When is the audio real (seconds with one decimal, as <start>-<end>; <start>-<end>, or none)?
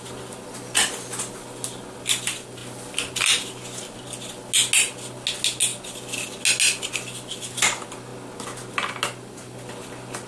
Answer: 0.0-10.3